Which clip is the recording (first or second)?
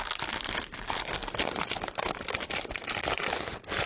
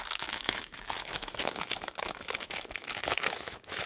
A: first